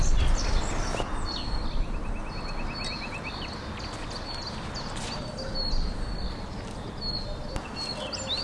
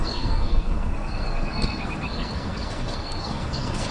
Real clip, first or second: first